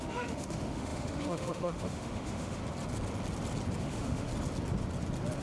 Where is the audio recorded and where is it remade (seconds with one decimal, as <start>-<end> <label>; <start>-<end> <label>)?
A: 0.0-2.6 remade; 2.6-3.8 recorded; 3.8-4.3 remade; 4.3-5.4 recorded